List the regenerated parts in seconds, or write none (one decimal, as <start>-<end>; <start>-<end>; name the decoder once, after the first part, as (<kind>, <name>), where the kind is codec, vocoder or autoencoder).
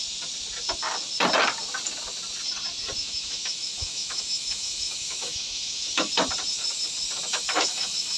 3.0-6.1 (autoencoder, DAC-VAE); 7.3-8.2